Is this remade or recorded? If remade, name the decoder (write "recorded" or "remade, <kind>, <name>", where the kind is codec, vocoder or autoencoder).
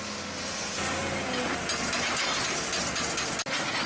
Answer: recorded